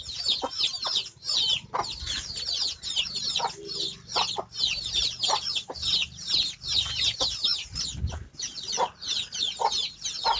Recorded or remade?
recorded